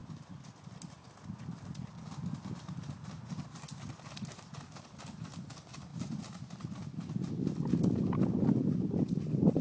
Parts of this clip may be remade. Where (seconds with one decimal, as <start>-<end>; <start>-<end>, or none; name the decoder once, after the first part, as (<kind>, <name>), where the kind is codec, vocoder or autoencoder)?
none